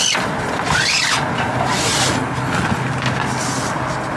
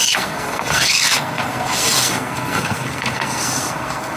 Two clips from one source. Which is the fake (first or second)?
second